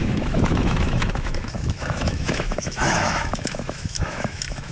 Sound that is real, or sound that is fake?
fake